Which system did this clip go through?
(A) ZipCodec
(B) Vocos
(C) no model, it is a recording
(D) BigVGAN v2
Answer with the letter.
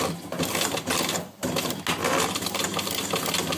C